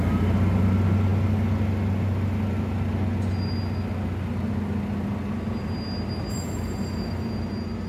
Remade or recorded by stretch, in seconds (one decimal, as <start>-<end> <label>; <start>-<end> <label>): 0.0-7.9 recorded